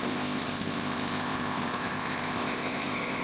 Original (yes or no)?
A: no